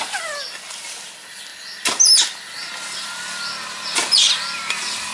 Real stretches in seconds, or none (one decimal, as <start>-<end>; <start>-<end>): 0.0-5.1